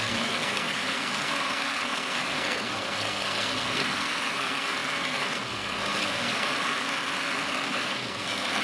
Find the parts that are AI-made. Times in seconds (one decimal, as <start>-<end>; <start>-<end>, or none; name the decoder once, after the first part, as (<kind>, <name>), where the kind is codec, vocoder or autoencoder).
0.0-8.6 (codec, SNAC)